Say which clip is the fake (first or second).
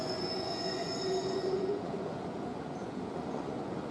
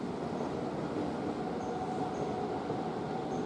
first